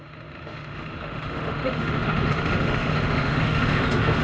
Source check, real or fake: fake